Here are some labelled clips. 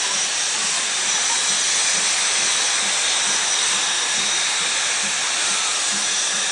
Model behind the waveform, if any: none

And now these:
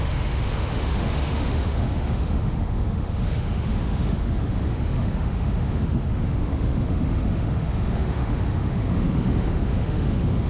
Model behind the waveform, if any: autoencoder, DAC-VAE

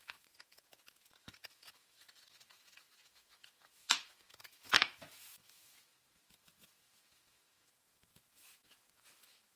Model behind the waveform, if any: autoencoder, DAC-VAE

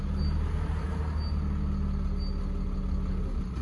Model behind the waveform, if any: none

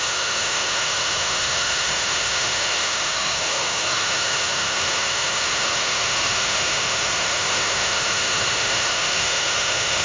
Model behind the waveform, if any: autoencoder, DAC-VAE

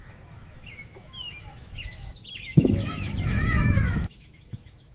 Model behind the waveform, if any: autoencoder, DAC-VAE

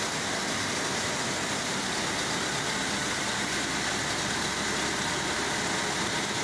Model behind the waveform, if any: none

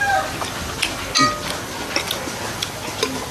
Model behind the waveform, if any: none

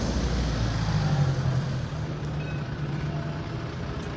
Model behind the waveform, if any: none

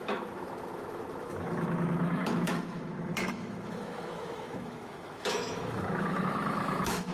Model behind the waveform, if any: autoencoder, DAC-VAE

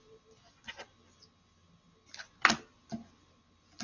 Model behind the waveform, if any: none